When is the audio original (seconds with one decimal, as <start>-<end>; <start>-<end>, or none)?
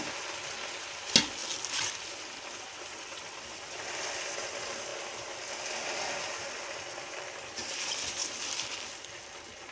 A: 0.0-9.7